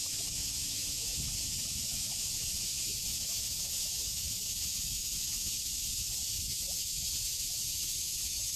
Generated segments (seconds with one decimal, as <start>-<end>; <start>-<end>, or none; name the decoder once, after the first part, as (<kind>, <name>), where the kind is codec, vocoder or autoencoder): 0.0-8.6 (autoencoder, DAC-VAE)